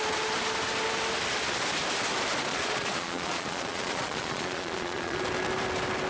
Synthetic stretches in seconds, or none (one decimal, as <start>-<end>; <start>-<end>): 2.5-5.2